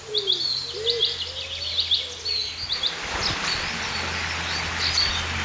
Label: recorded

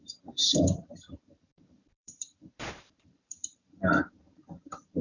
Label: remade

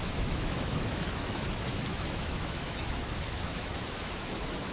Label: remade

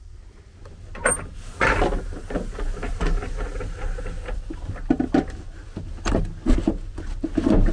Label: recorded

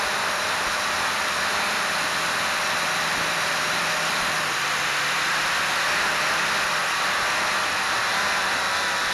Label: recorded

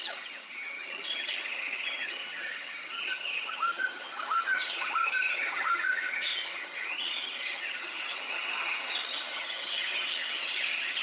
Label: remade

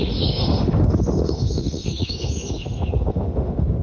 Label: remade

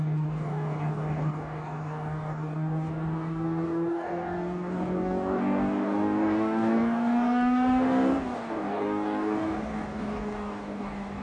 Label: remade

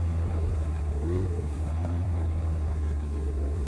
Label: remade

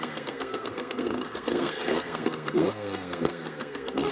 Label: remade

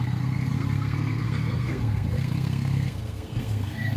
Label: remade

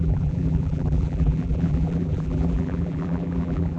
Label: remade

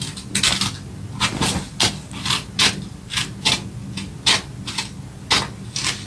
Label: recorded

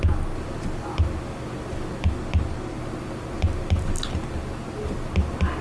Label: recorded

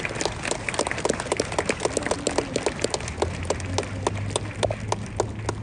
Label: recorded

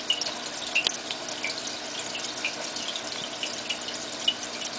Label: recorded